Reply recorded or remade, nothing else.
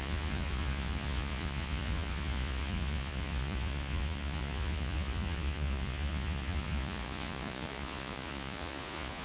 remade